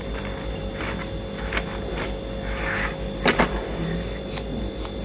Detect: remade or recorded recorded